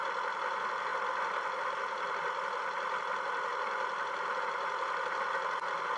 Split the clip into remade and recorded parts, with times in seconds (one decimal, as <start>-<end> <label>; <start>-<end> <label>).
0.0-6.0 recorded